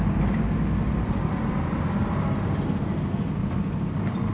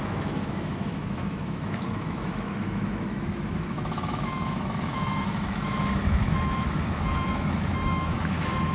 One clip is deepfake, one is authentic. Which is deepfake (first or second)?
second